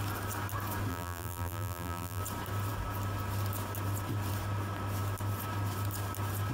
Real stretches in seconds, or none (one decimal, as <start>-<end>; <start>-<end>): 0.0-0.9; 2.2-6.5